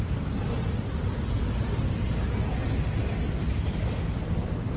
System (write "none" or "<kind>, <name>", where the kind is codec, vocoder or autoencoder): none